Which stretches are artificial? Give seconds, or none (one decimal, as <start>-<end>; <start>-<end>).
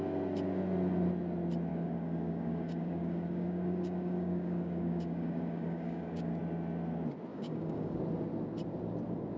1.7-6.4; 7.3-8.0